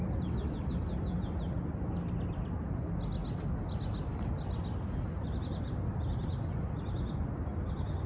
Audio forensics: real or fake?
real